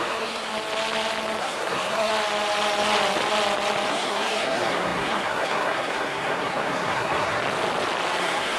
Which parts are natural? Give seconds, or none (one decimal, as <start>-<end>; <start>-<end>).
0.5-1.4; 2.1-3.9; 7.4-8.2